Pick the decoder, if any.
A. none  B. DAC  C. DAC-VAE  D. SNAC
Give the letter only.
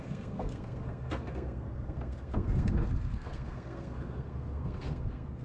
D